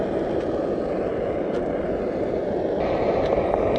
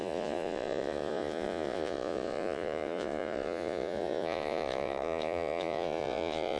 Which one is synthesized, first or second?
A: second